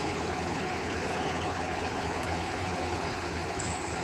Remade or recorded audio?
remade